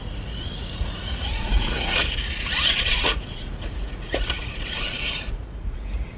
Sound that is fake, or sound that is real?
fake